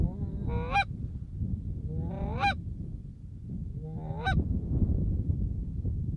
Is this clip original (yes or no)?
yes